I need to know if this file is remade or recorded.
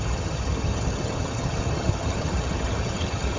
remade